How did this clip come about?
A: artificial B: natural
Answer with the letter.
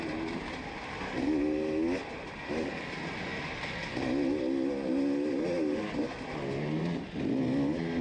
B